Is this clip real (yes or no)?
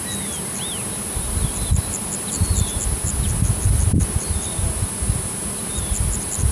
yes